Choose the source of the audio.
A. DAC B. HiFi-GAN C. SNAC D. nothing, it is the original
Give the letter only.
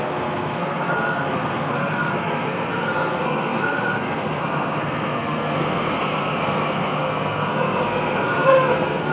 C